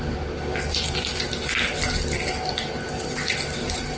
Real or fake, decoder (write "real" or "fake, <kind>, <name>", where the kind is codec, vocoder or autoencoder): real